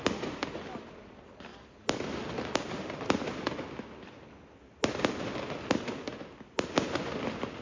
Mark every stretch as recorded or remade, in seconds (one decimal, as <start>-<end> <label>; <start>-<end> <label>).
0.0-7.6 recorded